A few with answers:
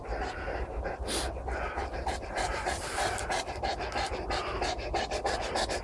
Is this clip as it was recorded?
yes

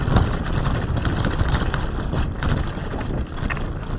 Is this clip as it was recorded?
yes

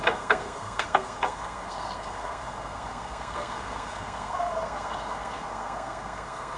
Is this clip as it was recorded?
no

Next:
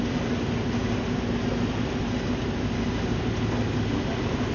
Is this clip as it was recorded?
yes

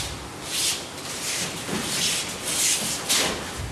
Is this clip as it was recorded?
yes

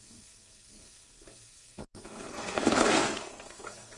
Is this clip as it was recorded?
no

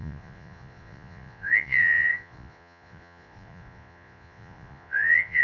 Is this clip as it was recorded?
no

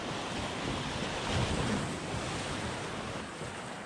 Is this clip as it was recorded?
yes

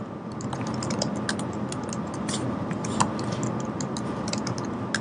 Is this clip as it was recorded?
yes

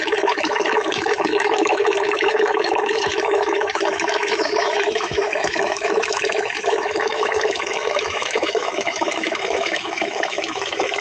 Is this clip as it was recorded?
no